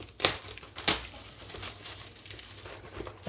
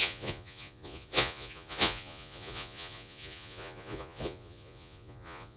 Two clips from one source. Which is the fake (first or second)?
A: second